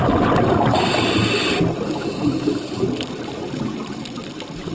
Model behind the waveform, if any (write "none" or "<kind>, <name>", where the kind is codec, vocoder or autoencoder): none